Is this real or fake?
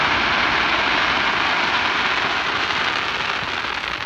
real